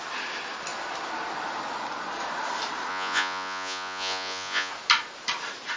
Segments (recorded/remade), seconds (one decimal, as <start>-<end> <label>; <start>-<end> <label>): 0.0-2.9 recorded; 2.9-4.7 remade; 4.7-5.8 recorded